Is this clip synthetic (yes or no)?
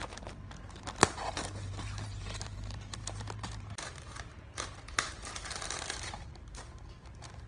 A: yes